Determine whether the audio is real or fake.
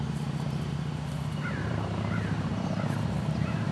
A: fake